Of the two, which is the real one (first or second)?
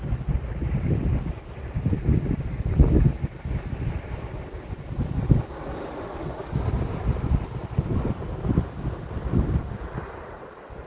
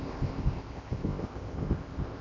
first